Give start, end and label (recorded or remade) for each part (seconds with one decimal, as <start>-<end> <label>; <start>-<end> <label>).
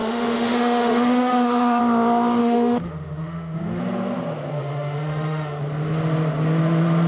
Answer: 0.0-1.8 remade; 1.8-2.4 recorded; 2.4-3.8 remade; 3.8-4.5 recorded; 4.5-5.6 remade; 5.6-7.1 recorded